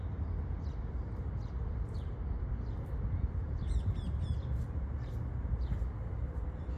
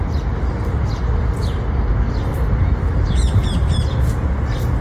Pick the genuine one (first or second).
second